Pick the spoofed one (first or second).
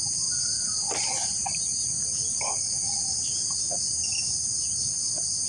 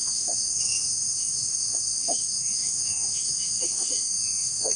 second